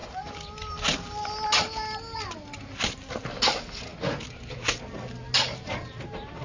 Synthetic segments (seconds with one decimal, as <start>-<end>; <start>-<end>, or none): none